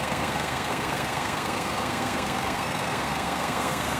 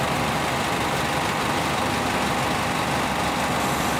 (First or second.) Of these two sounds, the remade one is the first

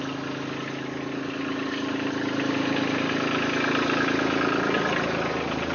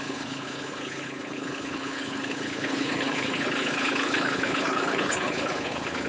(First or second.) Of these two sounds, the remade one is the second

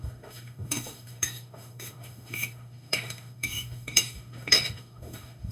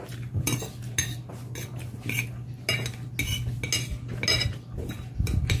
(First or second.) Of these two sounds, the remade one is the first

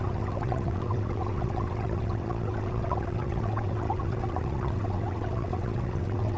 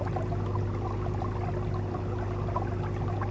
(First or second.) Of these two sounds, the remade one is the first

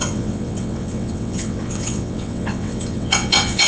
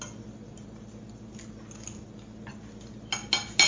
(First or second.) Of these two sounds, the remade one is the first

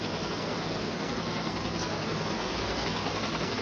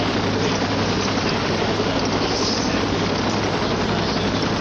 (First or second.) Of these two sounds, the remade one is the first